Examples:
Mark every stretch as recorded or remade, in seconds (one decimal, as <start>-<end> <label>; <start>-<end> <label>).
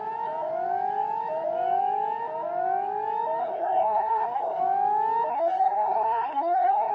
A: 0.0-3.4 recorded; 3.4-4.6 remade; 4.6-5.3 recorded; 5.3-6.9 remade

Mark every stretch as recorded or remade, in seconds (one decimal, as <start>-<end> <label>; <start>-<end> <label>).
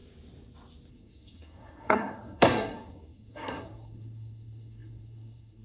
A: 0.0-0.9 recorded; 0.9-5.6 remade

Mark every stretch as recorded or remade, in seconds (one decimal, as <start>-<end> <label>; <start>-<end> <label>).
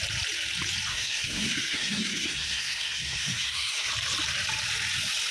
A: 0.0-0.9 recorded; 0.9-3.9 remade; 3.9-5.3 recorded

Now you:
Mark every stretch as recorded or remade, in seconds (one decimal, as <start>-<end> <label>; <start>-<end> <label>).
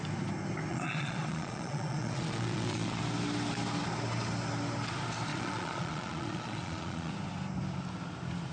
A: 0.0-0.7 recorded; 0.7-3.0 remade; 3.0-5.3 recorded; 5.3-7.1 remade; 7.1-8.5 recorded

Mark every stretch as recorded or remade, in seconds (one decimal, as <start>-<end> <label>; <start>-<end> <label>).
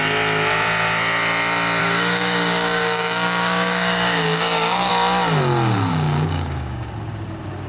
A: 0.0-1.8 recorded; 1.8-4.9 remade; 4.9-5.9 recorded; 5.9-6.9 remade; 6.9-7.7 recorded